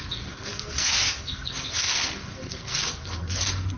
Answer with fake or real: fake